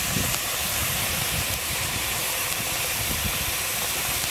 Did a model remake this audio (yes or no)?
yes